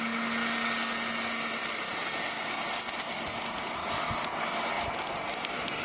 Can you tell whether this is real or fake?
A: real